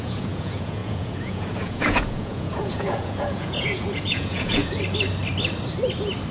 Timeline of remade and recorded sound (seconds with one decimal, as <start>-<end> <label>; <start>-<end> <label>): 0.0-4.6 remade; 4.6-6.3 recorded